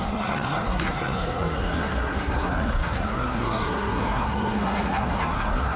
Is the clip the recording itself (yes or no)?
no